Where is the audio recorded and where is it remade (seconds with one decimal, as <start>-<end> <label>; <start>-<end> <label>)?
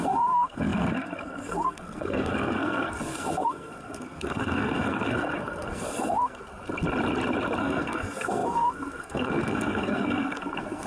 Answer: 0.0-6.5 remade; 6.5-7.6 recorded; 7.6-10.9 remade